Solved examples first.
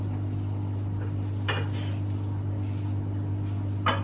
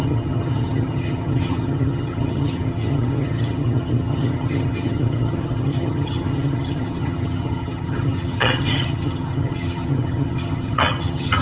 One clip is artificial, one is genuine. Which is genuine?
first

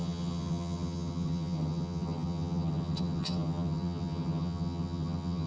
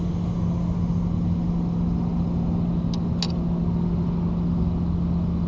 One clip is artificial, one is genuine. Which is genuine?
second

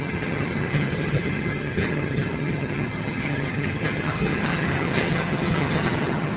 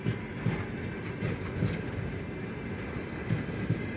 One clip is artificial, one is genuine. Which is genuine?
second